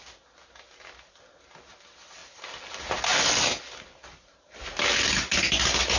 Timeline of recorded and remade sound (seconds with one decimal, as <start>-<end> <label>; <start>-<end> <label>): 0.0-6.0 recorded